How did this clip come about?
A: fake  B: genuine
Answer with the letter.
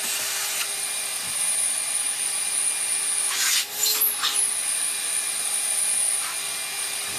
B